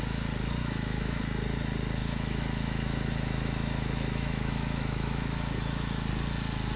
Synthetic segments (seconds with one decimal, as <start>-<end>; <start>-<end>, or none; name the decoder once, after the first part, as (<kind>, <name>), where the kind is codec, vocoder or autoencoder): 0.6-1.2 (autoencoder, DAC-VAE); 2.0-6.1